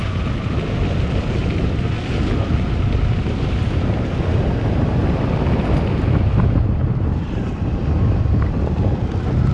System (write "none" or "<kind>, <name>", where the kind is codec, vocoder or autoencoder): none